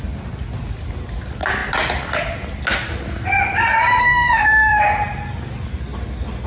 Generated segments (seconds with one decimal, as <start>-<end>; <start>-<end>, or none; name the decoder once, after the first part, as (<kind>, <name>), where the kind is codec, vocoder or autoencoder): 4.0-4.8 (autoencoder, DAC-VAE)